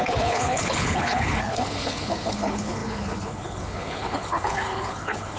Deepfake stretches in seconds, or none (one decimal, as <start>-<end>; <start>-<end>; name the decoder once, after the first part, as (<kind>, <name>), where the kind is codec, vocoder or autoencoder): 0.0-5.4 (codec, HILCodec)